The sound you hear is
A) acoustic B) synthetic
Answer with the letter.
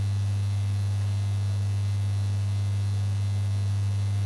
A